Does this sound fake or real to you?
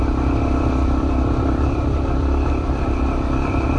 fake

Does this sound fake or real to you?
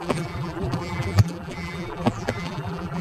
fake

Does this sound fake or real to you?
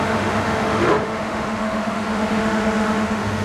fake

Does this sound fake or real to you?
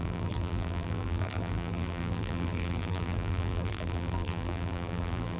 fake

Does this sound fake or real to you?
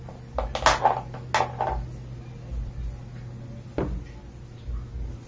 real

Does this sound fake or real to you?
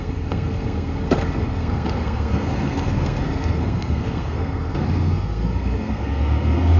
fake